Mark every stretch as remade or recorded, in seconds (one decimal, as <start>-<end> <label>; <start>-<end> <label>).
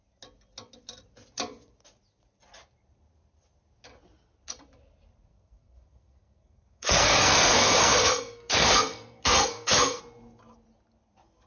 0.0-5.3 recorded; 5.3-10.0 remade; 10.0-11.5 recorded